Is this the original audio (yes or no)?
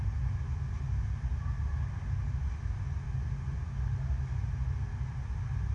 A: yes